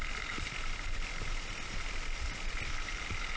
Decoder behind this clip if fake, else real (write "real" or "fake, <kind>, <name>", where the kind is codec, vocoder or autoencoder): real